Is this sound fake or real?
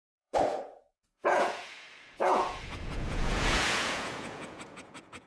fake